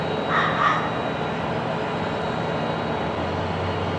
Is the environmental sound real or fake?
real